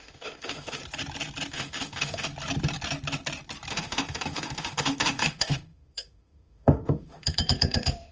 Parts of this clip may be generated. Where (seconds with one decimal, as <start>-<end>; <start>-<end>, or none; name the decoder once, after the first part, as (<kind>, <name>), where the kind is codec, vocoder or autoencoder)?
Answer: 0.0-0.8 (autoencoder, DAC-VAE); 1.5-2.3; 3.7-8.1